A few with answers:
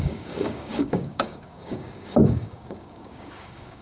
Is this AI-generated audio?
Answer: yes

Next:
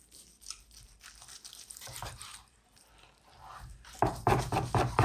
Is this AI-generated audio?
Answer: yes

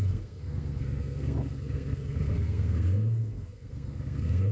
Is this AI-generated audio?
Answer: yes